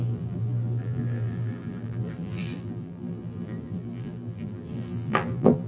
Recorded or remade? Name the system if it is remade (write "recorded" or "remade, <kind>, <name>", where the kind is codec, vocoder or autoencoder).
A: remade, vocoder, BigVGAN v2